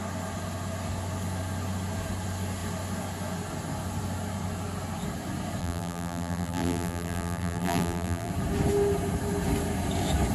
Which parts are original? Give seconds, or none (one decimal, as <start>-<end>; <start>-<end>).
0.0-5.6; 8.3-10.3